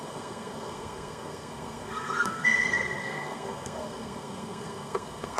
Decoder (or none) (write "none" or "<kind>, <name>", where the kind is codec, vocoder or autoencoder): codec, SNAC